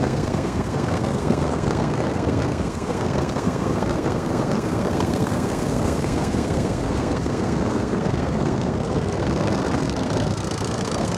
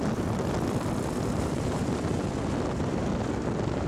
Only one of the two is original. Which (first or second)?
second